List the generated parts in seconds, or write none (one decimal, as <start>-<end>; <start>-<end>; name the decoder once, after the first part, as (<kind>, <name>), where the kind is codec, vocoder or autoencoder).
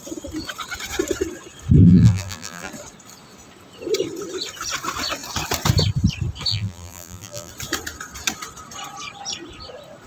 1.8-2.7 (vocoder, BigVGAN v2); 6.5-7.5